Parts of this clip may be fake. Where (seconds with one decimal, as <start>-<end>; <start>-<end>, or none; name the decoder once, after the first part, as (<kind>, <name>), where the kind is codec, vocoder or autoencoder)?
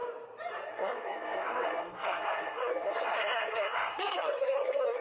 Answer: 0.7-5.0 (codec, SNAC)